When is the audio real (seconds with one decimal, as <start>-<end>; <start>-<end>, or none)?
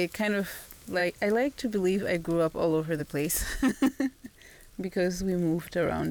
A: 1.0-3.0; 3.7-6.1